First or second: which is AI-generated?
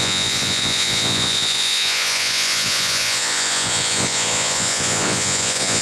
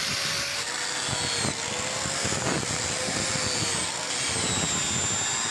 first